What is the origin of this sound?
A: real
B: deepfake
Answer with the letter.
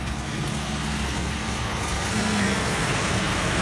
B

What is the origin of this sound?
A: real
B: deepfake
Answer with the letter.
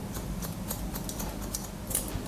A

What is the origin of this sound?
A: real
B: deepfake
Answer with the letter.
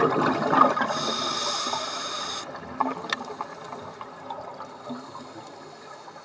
A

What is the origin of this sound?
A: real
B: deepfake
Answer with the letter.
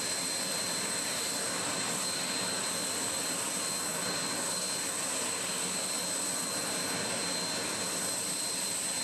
A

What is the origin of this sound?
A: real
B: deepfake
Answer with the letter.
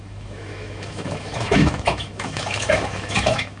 B